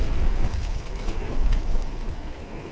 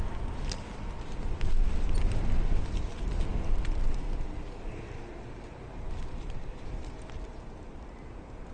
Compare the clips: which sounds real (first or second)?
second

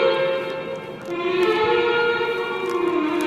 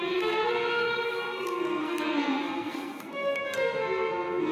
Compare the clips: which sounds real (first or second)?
first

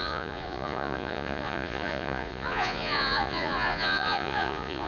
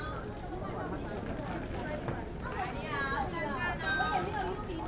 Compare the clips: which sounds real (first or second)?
second